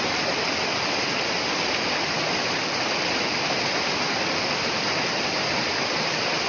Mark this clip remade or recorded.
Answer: recorded